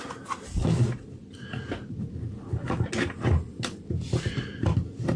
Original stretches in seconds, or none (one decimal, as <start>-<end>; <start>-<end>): 0.0-5.2